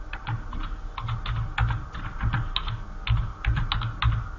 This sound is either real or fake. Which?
real